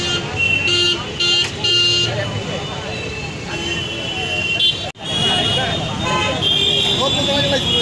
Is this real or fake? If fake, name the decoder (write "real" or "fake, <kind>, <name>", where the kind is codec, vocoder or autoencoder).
real